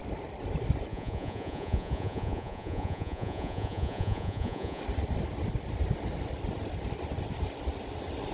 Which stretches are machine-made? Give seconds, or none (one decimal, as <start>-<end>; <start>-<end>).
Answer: 0.9-4.8